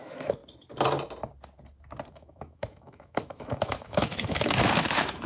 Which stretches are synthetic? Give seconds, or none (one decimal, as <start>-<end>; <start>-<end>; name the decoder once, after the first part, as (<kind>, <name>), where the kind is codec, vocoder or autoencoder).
0.0-0.4 (autoencoder, DAC-VAE); 2.1-5.3